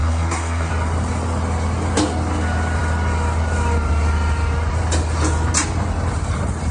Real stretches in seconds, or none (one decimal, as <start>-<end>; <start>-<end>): 0.7-6.7